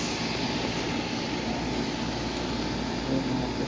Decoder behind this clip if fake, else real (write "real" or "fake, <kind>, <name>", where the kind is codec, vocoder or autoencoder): real